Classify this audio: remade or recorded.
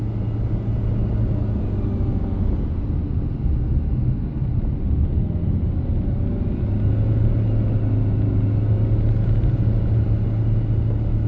recorded